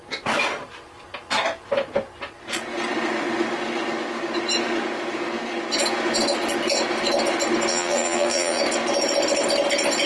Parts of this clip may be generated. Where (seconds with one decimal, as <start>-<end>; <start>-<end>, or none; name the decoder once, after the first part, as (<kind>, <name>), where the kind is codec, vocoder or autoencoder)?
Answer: 7.7-8.6 (vocoder, BigVGAN v2)